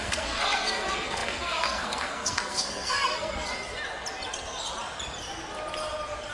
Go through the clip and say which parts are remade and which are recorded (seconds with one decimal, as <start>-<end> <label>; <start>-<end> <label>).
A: 0.0-3.5 remade; 3.5-6.3 recorded